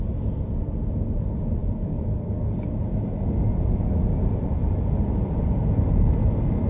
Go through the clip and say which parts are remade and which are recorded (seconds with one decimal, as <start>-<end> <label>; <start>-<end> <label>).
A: 0.0-1.6 recorded; 1.6-2.6 remade; 2.6-6.7 recorded